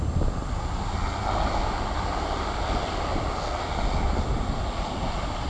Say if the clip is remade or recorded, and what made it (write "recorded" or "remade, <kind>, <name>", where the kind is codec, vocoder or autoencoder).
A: recorded